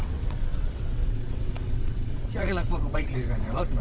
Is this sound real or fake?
fake